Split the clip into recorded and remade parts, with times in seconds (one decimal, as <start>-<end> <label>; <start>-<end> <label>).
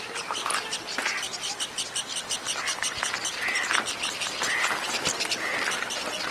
0.0-6.3 recorded